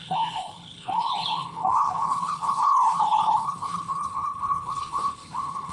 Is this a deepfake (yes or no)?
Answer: yes